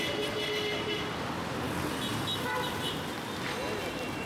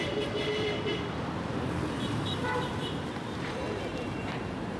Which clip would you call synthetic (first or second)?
second